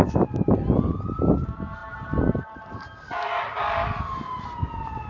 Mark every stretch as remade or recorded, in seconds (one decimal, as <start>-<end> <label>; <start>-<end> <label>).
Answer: 0.0-5.1 recorded